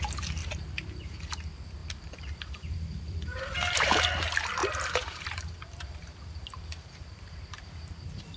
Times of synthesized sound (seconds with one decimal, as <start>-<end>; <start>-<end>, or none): 0.4-1.2; 1.8-4.0; 4.6-6.2